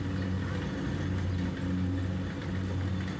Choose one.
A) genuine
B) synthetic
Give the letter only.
A